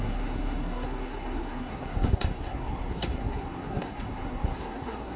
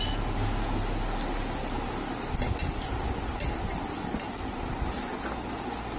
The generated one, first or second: first